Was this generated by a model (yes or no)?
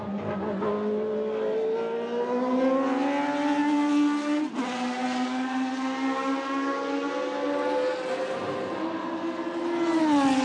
no